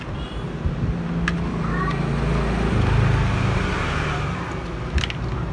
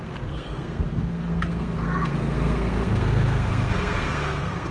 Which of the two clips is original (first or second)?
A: first